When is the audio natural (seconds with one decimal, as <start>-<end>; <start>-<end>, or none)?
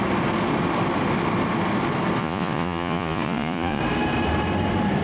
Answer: 0.0-2.2; 3.8-5.0